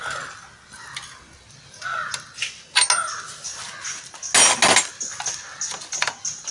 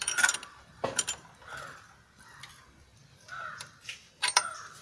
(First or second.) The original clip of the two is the first